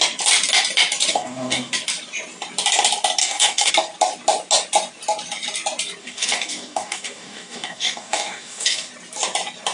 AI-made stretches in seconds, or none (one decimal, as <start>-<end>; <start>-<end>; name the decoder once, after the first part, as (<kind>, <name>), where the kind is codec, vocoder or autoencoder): 1.1-1.7 (codec, DAC); 3.2-3.7; 6.0-8.9